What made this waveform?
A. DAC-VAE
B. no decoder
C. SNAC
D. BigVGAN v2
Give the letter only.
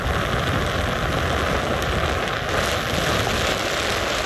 B